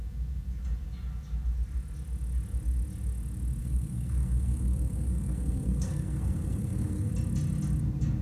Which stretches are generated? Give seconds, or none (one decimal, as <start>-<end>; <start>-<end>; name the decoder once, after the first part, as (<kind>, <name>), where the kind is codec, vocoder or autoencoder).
3.6-7.1 (codec, SNAC)